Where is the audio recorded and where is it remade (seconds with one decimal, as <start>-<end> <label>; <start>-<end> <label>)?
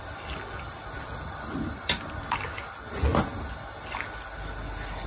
0.0-5.1 recorded